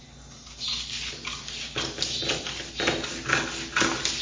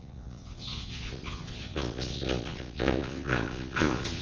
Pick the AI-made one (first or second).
second